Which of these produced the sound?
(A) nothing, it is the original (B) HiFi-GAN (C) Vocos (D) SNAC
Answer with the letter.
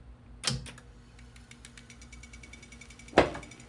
A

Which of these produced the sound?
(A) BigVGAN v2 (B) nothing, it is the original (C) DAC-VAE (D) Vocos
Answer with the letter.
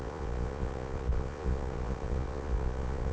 D